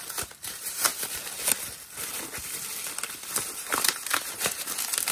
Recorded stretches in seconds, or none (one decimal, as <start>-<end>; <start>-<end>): 0.9-3.5